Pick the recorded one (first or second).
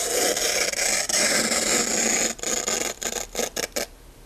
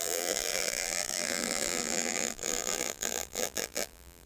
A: first